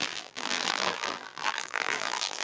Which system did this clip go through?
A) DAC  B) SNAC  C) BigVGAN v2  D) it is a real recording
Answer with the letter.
C